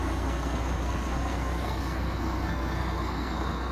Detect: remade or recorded remade